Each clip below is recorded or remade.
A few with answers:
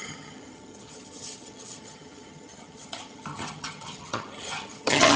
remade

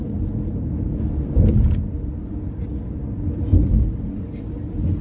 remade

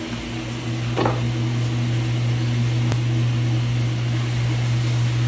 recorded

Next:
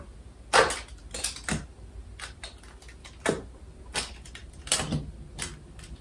recorded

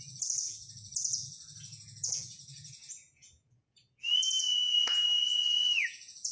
remade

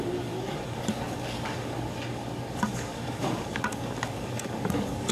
remade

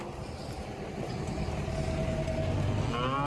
recorded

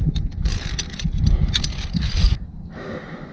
recorded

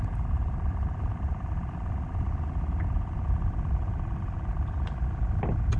recorded